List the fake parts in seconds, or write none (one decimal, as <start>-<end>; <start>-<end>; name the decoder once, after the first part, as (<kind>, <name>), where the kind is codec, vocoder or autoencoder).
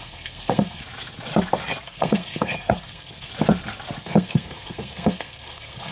0.0-0.8 (codec, SNAC); 1.8-3.3; 4.0-5.9